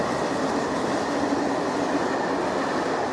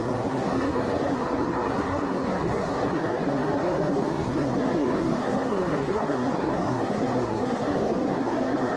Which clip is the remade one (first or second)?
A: second